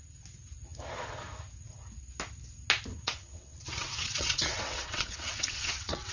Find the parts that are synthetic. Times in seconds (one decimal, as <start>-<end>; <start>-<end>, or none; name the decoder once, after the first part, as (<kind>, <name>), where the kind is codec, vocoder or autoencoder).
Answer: 2.9-6.1 (vocoder, WaveNeXt)